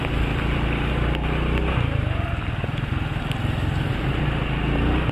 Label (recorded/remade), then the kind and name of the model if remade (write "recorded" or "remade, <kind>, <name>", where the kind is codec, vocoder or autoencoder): recorded